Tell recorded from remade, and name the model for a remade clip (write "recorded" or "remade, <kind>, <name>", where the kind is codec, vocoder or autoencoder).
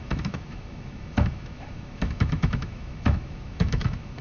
remade, autoencoder, DAC-VAE